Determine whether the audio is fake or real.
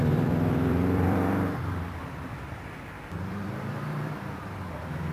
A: fake